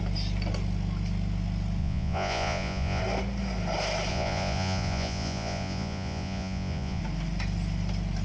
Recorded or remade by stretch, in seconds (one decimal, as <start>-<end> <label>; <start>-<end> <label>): 0.0-1.8 recorded; 1.8-3.0 remade; 3.0-4.1 recorded; 4.1-7.0 remade; 7.0-8.2 recorded

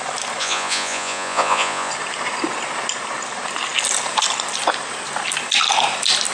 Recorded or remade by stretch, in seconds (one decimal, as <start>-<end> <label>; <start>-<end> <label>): 0.0-0.4 recorded; 0.4-1.9 remade; 1.9-6.3 recorded

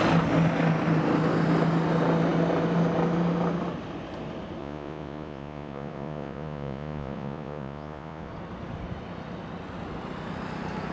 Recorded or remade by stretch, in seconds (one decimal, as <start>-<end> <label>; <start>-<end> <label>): 0.0-4.6 recorded; 4.6-8.3 remade; 8.3-10.9 recorded